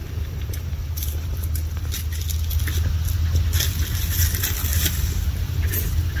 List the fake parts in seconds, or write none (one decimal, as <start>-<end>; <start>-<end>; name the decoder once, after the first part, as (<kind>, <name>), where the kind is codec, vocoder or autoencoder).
0.0-1.4 (vocoder, BigVGAN v2); 4.7-6.2